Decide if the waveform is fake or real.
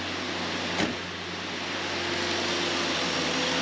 real